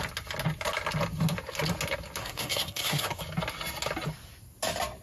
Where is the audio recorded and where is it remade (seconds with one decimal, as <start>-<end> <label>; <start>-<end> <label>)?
0.0-2.2 recorded; 2.2-3.2 remade; 3.2-5.0 recorded